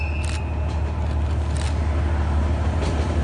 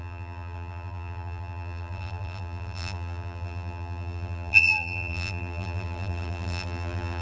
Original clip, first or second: first